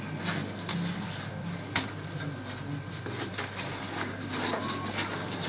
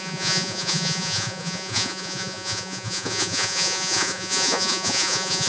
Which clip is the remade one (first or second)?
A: second